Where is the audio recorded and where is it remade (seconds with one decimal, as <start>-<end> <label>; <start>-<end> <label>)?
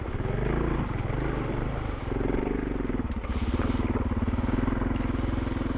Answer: 0.0-5.8 recorded